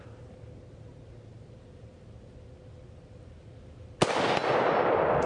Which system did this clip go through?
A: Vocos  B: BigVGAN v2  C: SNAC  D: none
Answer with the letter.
D